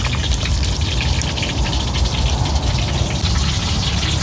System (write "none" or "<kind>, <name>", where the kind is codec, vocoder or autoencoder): none